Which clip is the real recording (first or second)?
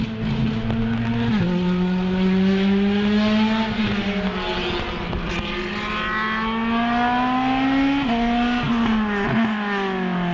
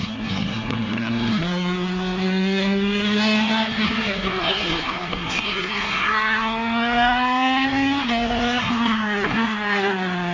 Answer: first